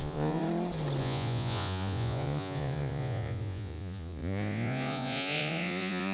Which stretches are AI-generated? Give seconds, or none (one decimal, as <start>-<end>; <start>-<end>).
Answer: 0.0-0.4; 1.0-6.1